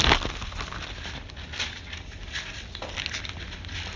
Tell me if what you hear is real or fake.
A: real